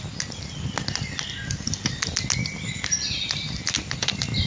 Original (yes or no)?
yes